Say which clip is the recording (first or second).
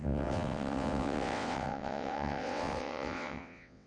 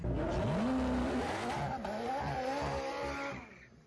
second